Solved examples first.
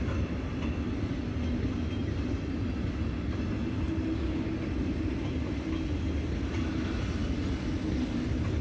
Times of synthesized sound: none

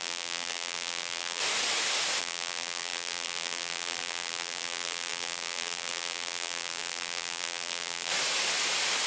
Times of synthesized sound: 0.0-1.4 (vocoder, BigVGAN v2); 2.2-8.1

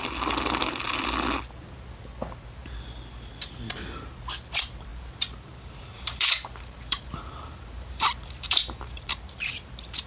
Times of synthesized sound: 4.9-10.1 (vocoder, BigVGAN v2)

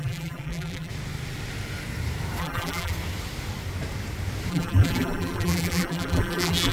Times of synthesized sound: 0.0-0.9 (vocoder, BigVGAN v2); 2.4-2.9; 4.5-6.7

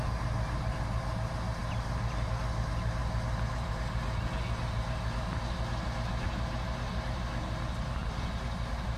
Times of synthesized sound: none

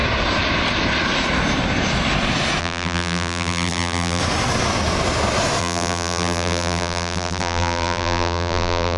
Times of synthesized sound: 2.6-4.2 (vocoder, BigVGAN v2); 5.6-9.0